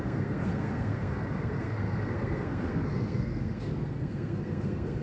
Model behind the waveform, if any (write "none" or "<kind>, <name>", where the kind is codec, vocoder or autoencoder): codec, SNAC